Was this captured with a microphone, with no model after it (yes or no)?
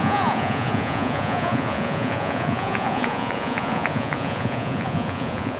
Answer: no